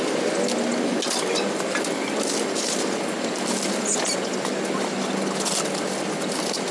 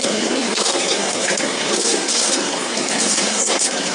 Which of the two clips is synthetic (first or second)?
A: second